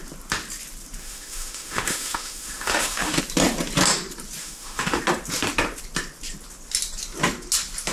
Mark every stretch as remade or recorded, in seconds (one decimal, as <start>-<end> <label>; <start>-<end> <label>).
0.0-1.0 recorded; 1.0-3.2 remade; 3.2-4.4 recorded; 4.4-5.0 remade; 5.0-7.9 recorded